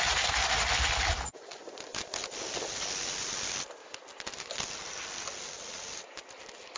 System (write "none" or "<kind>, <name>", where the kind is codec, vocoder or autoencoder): none